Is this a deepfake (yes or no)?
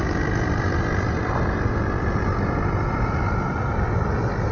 no